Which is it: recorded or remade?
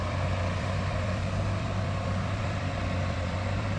remade